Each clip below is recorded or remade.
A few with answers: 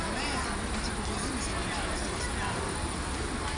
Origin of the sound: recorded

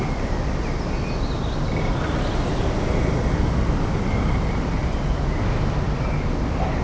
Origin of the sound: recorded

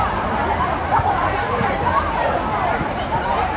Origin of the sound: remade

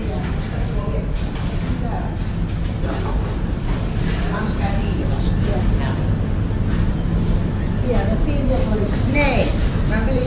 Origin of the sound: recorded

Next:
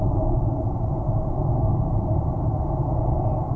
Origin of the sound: remade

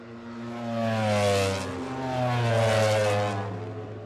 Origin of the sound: recorded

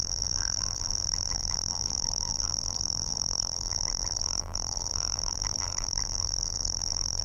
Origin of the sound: remade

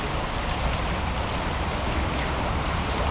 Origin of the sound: recorded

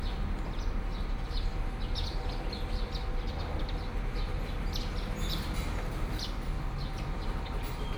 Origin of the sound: recorded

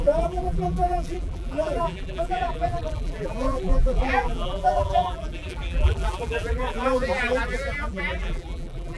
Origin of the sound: remade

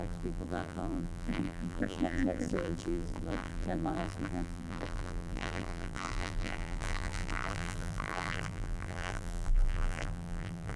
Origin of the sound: remade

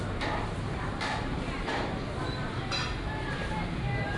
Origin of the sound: remade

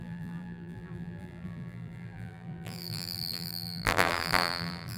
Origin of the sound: remade